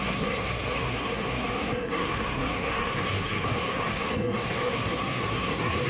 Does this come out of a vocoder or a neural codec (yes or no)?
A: yes